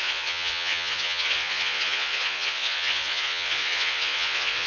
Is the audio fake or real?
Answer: fake